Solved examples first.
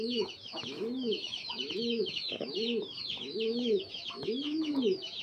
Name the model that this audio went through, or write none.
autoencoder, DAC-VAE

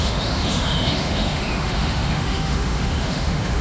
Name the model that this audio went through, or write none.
autoencoder, DAC-VAE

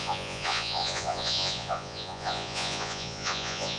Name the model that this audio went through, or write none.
vocoder, Vocos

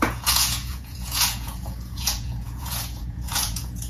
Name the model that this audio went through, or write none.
vocoder, Vocos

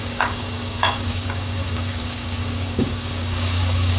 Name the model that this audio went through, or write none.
codec, DAC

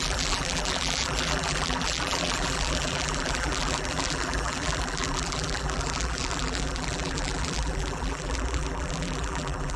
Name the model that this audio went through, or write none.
vocoder, BigVGAN v2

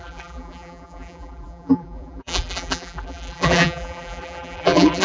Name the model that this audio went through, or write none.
vocoder, BigVGAN v2